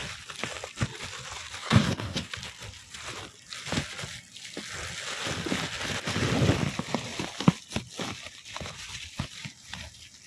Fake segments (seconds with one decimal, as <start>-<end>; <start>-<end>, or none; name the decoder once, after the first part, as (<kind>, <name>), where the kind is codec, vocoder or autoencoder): 1.6-2.3 (codec, SNAC)